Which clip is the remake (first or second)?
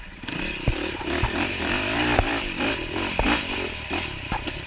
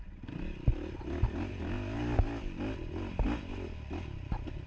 first